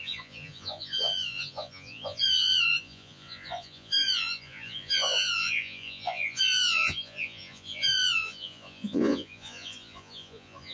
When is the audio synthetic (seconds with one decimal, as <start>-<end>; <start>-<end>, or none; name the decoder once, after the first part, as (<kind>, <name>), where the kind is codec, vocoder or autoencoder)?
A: 0.0-10.7 (vocoder, Vocos)